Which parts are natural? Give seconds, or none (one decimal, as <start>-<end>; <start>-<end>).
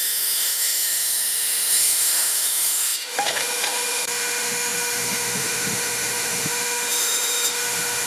none